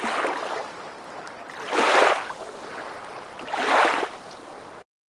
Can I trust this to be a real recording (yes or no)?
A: yes